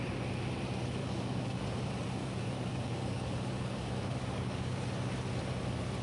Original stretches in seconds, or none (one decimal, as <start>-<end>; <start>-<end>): 0.0-1.0; 1.6-2.2; 4.8-6.0

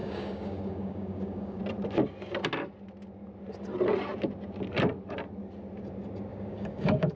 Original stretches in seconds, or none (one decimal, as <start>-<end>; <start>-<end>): 1.6-6.3

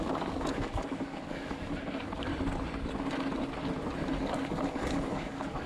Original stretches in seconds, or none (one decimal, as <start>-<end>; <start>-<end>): 2.3-4.2

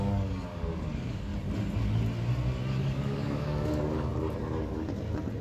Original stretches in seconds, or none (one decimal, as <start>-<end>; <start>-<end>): 1.3-2.8; 4.1-5.4

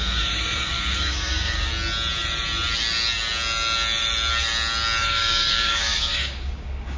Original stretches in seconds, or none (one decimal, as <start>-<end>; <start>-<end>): 1.7-5.0

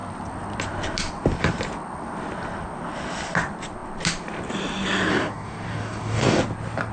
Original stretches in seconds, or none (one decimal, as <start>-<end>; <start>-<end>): 0.0-5.1; 6.4-6.9

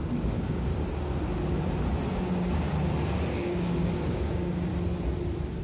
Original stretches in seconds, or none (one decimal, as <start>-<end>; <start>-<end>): 0.7-2.1; 2.7-3.3; 4.7-5.6